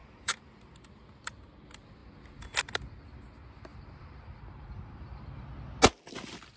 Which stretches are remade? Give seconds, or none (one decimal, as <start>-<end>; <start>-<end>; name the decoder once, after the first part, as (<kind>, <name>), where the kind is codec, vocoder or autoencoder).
0.0-0.5 (vocoder, BigVGAN v2); 3.7-5.4